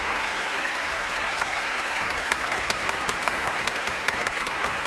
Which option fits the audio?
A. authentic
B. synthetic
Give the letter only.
B